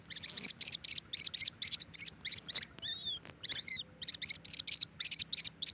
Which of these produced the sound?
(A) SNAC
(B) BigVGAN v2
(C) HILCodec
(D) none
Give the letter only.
D